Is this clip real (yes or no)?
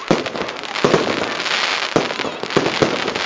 yes